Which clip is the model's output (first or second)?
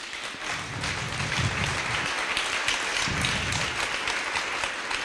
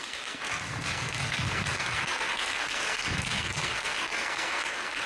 second